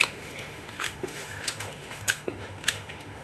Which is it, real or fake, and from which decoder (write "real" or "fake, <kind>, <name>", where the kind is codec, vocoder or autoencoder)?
fake, autoencoder, DAC-VAE